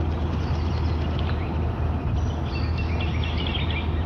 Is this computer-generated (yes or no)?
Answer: no